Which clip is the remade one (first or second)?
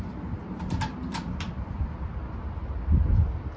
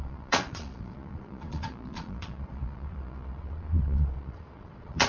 second